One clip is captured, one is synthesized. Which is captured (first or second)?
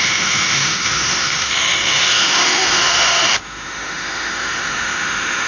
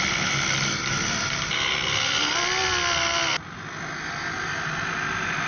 second